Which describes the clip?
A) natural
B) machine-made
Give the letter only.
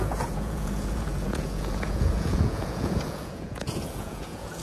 B